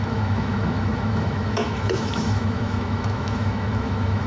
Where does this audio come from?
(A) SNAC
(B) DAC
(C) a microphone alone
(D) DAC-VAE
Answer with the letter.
D